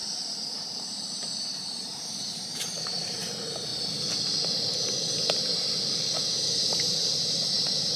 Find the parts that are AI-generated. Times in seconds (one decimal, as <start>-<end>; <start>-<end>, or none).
0.9-3.7; 4.9-5.5; 6.4-8.0